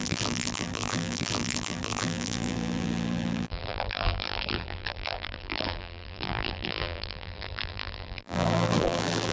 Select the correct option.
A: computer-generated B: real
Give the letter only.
A